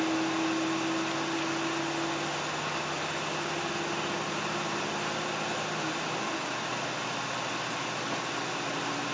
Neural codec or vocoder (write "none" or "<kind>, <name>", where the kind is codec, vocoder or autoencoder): none